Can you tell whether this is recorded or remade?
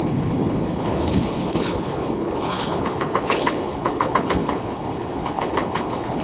remade